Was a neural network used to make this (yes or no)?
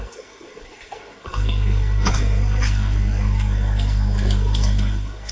yes